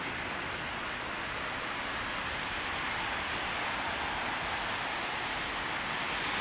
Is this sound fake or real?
real